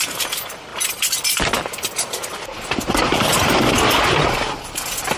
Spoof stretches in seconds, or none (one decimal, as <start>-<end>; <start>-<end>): none